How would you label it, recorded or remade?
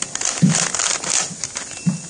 recorded